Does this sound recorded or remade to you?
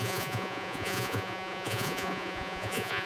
remade